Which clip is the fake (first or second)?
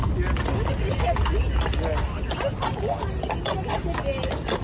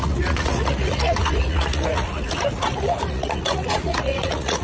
second